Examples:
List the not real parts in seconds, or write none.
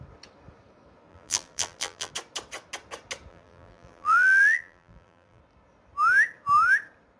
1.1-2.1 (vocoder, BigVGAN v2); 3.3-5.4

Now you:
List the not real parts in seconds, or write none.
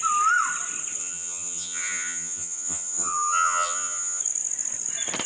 1.0-4.2 (vocoder, HiFi-GAN)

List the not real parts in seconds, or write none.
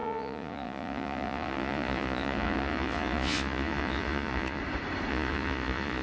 0.0-4.6 (vocoder, Vocos); 5.1-6.0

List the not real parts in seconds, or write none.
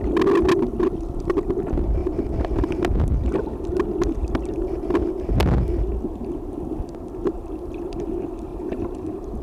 8.5-9.4 (vocoder, BigVGAN v2)